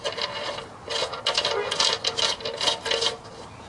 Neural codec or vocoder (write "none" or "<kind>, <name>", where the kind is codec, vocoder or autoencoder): none